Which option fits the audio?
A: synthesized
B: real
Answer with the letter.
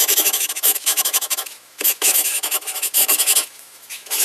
A